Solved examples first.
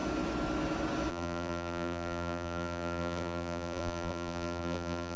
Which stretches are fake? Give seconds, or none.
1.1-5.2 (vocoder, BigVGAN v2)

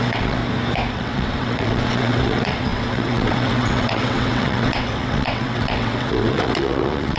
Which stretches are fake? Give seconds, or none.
0.0-0.4 (vocoder, WaveNeXt); 0.9-7.2

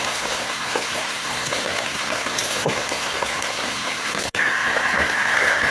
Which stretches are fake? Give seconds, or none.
0.0-5.7 (codec, SNAC)

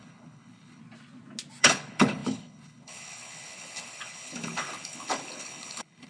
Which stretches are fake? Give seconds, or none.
0.0-0.8 (codec, HILCodec); 1.6-6.1

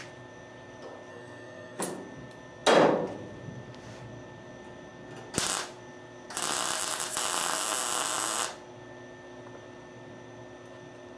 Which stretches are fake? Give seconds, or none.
1.1-1.8 (codec, SNAC)

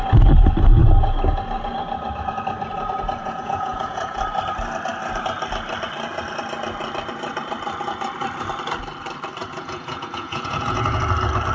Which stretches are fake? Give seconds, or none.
3.2-4.2 (vocoder, Vocos); 9.4-11.0